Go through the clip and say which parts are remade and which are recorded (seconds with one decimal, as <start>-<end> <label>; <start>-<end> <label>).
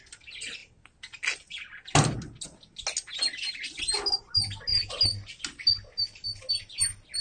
0.0-7.2 recorded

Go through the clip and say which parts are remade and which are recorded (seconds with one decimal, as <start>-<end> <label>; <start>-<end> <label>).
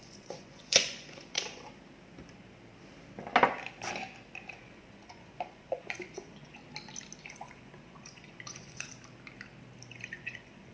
0.0-1.7 remade; 1.7-4.5 recorded; 4.5-6.6 remade; 6.6-7.2 recorded; 7.2-8.9 remade; 8.9-9.9 recorded; 9.9-10.7 remade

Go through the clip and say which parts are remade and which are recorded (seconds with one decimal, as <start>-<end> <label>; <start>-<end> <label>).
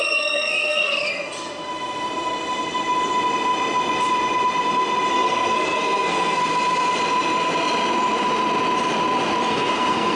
0.0-1.1 remade; 1.1-5.1 recorded; 5.1-6.4 remade; 6.4-9.5 recorded; 9.5-10.2 remade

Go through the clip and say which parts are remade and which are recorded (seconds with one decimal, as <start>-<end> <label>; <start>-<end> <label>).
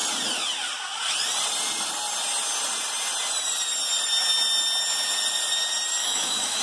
0.0-6.0 recorded; 6.0-6.6 remade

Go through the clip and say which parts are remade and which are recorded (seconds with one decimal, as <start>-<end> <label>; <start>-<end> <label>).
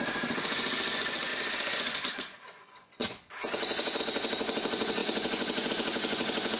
0.0-6.6 remade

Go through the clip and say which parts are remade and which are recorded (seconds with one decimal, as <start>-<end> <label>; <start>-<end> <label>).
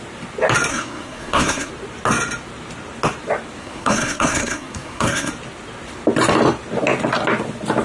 0.0-0.7 recorded; 0.7-1.7 remade; 1.7-3.6 recorded; 3.6-5.3 remade; 5.3-7.8 recorded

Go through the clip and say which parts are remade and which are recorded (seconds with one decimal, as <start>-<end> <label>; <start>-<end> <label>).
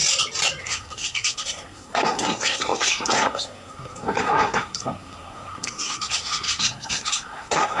0.0-0.6 recorded; 0.6-7.8 remade